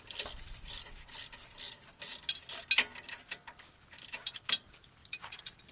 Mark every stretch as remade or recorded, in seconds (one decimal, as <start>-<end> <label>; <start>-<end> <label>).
0.0-5.7 recorded